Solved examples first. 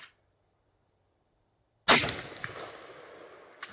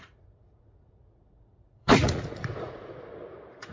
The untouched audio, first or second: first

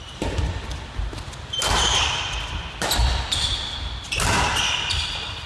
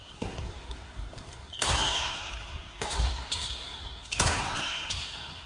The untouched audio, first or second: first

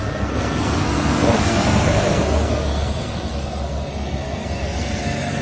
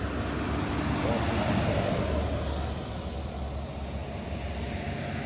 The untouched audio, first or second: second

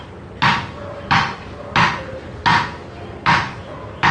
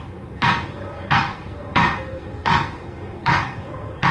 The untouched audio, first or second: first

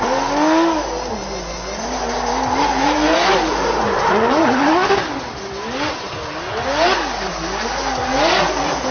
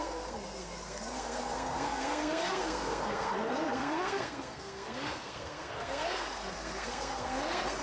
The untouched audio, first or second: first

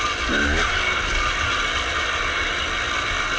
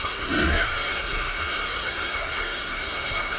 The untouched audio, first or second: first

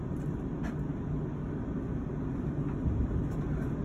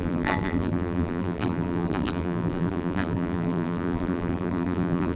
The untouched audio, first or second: first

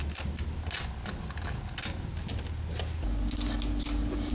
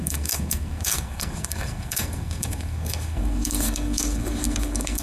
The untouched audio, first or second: first